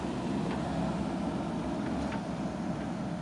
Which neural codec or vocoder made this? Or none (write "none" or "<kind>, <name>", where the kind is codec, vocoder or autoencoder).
vocoder, BigVGAN v2